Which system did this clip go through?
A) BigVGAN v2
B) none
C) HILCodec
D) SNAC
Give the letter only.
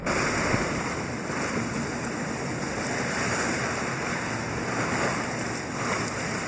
B